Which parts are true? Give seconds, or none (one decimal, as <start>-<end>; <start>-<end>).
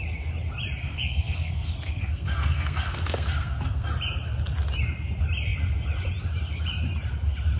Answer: 0.0-0.8; 3.9-7.6